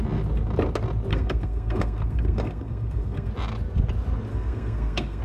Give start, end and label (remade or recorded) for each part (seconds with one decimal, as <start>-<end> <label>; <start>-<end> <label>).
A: 0.0-1.1 recorded; 1.1-3.3 remade; 3.3-4.3 recorded; 4.3-5.2 remade